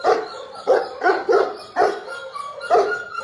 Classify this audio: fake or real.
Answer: fake